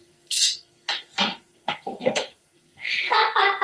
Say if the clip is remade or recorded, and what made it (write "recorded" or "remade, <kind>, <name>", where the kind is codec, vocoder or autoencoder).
remade, codec, SNAC